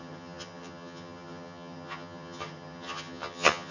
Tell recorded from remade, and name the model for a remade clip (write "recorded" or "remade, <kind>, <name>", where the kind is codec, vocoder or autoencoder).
remade, vocoder, HiFi-GAN